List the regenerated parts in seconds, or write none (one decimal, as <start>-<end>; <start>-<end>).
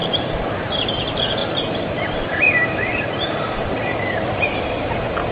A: 0.0-0.7; 1.4-4.3